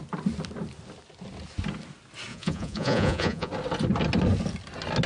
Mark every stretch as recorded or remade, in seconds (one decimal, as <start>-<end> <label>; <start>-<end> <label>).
0.0-2.3 recorded; 2.3-3.5 remade; 3.5-5.1 recorded